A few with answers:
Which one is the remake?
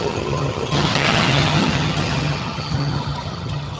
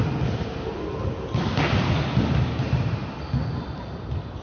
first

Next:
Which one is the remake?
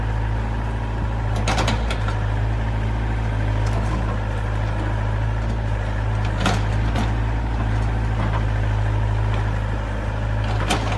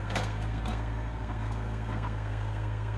second